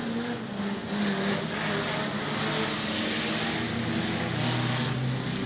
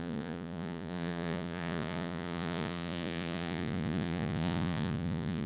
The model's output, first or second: second